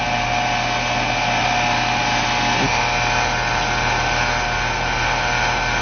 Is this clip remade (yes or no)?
no